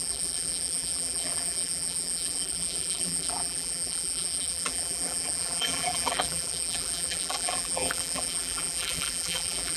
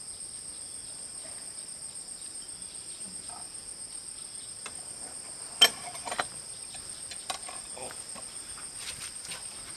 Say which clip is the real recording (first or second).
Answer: second